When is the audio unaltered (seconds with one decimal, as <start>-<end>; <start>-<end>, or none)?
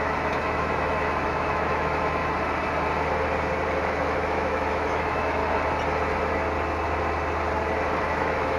2.2-3.8; 5.4-8.1